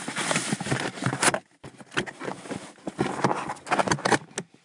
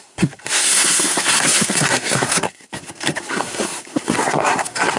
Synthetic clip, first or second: second